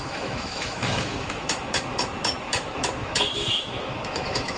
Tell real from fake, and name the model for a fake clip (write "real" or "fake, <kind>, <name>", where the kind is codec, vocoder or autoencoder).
fake, autoencoder, DAC-VAE